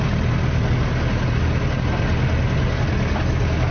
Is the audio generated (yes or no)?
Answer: no